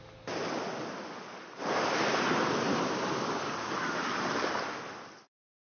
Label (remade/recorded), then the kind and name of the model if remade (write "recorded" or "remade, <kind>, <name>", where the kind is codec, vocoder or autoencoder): recorded